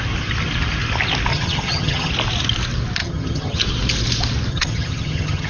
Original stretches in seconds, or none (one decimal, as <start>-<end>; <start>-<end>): 0.0-1.3; 2.1-3.0; 3.6-4.5